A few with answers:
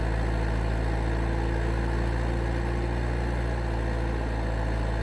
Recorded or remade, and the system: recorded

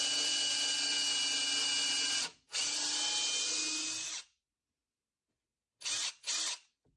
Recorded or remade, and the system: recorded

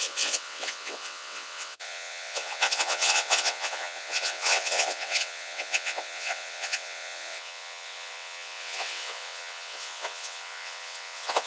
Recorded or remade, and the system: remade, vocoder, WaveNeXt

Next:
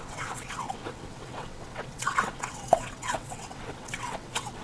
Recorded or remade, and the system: remade, vocoder, WaveNeXt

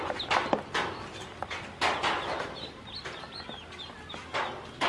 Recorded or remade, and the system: recorded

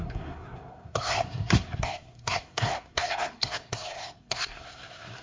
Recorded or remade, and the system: remade, codec, SNAC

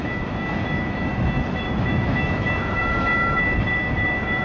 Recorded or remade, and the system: remade, autoencoder, DAC-VAE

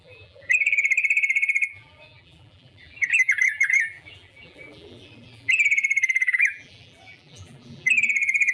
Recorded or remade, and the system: remade, vocoder, BigVGAN v2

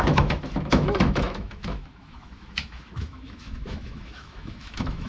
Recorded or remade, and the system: remade, autoencoder, DAC-VAE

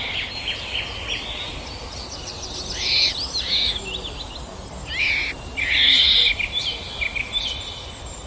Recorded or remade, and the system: recorded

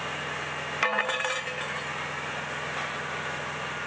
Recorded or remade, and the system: recorded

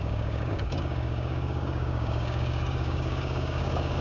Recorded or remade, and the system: remade, codec, DAC